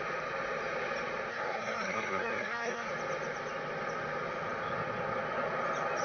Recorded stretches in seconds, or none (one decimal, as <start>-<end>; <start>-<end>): 0.0-1.3; 2.9-6.0